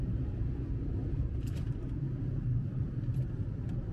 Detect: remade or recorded remade